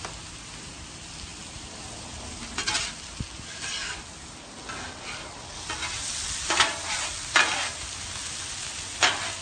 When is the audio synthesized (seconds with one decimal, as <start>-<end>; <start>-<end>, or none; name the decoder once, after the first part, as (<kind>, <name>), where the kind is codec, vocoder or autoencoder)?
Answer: none